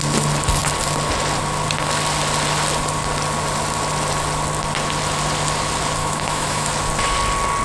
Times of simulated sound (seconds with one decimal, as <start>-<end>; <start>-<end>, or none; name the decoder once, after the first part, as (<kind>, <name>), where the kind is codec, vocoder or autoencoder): 6.0-6.7 (autoencoder, DAC-VAE)